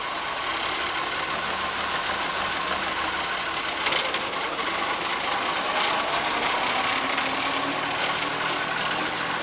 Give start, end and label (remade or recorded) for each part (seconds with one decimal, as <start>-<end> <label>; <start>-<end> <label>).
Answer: 0.0-9.4 recorded